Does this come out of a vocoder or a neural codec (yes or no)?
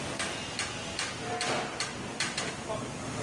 no